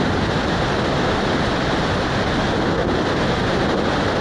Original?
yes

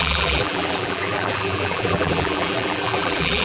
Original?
no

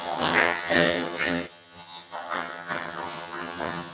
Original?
no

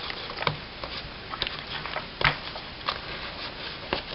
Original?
yes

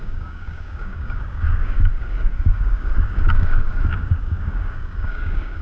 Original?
no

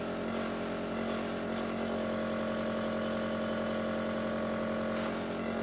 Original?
yes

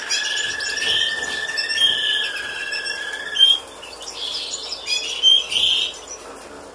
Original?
yes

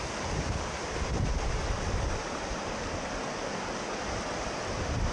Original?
yes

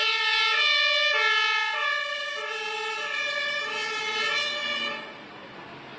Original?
yes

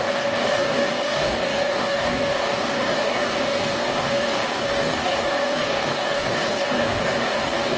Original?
no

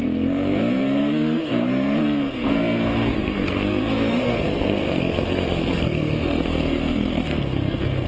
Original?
no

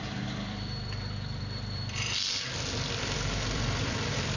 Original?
no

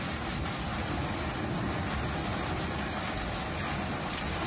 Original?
yes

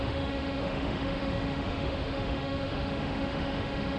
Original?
no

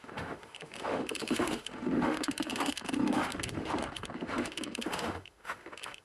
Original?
no